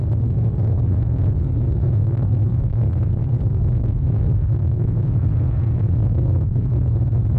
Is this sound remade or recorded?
remade